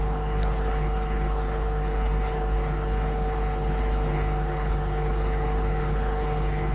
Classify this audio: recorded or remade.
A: remade